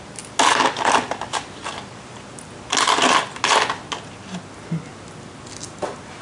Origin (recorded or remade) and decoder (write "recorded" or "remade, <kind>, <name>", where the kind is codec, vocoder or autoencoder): recorded